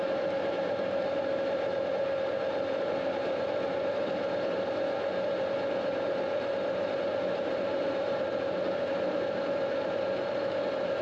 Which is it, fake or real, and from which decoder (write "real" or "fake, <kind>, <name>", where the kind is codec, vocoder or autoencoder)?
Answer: fake, vocoder, BigVGAN v2